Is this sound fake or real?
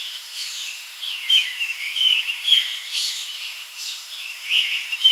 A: fake